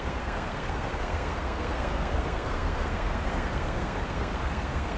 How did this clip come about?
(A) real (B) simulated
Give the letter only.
B